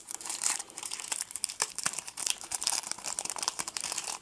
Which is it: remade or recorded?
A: remade